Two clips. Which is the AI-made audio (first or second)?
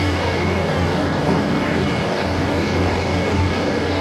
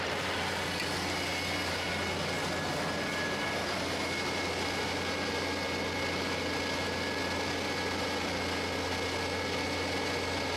first